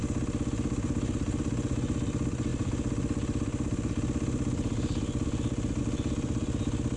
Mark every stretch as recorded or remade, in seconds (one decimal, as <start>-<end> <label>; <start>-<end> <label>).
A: 0.0-7.0 recorded

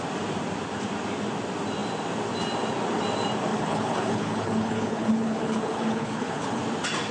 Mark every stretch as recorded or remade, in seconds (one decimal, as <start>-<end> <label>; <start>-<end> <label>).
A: 0.0-3.5 recorded; 3.5-6.6 remade; 6.6-7.1 recorded

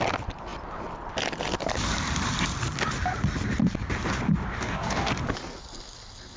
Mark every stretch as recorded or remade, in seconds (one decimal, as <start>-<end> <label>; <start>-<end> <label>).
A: 0.0-4.5 recorded; 4.5-5.1 remade; 5.1-6.4 recorded

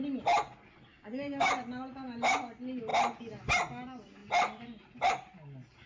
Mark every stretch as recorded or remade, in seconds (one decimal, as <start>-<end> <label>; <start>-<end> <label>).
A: 0.0-0.9 recorded; 0.9-1.5 remade; 1.5-5.9 recorded

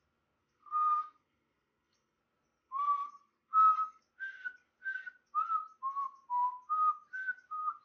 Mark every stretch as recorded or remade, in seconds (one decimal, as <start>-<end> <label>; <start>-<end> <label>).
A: 0.0-0.4 recorded; 0.4-2.2 remade; 2.2-2.6 recorded; 2.6-4.0 remade; 4.0-7.8 recorded

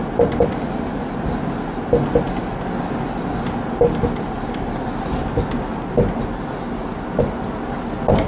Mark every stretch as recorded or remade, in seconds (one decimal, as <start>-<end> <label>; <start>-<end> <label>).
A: 0.0-8.3 recorded

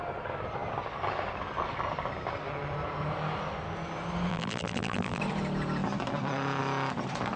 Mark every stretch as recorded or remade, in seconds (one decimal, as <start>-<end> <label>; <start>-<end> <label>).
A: 0.0-4.3 recorded; 4.3-5.2 remade; 5.2-7.4 recorded